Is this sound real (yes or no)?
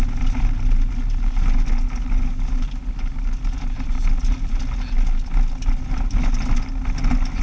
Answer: yes